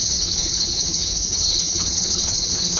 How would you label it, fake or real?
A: fake